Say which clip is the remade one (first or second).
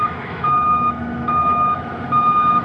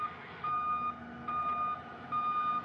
first